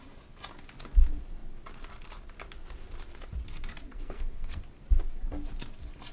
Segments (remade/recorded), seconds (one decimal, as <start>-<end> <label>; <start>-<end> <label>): 0.0-3.9 recorded; 3.9-4.6 remade; 4.6-6.1 recorded